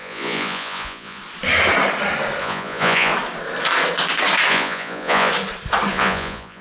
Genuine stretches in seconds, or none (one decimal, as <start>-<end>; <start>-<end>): 1.2-2.4; 3.1-4.5; 5.3-5.9